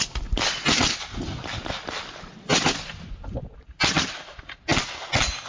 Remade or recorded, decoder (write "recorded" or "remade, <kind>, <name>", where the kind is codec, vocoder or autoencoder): recorded